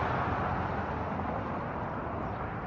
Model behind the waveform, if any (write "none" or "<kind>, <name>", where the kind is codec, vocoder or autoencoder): none